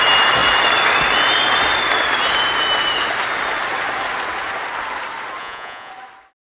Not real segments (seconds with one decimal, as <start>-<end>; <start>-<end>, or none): 5.4-5.9